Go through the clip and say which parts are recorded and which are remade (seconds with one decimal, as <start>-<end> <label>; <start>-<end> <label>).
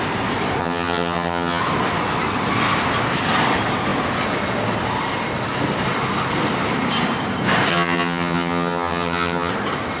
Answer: 0.0-0.6 recorded; 0.6-1.6 remade; 1.6-7.7 recorded; 7.7-9.5 remade; 9.5-10.0 recorded